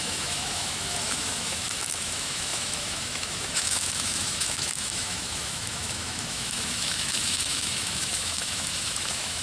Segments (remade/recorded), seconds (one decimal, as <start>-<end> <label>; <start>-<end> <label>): 0.0-9.4 remade